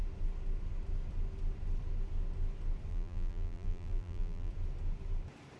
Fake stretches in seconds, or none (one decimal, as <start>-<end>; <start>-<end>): 2.9-4.5